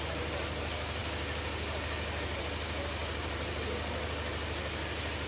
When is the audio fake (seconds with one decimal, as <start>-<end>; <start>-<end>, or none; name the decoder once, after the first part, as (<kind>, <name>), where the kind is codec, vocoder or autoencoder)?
3.0-3.6 (vocoder, BigVGAN v2)